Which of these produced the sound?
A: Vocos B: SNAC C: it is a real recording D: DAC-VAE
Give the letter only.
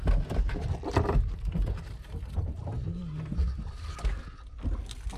C